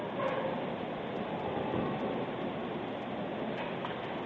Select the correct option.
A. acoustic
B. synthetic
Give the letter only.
A